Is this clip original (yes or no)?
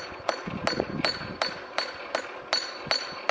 yes